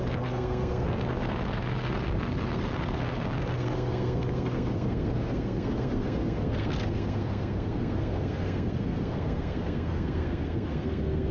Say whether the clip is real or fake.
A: fake